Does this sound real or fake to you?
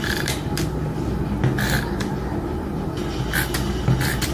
real